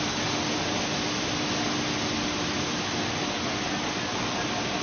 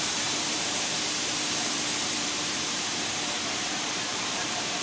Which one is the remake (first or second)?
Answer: second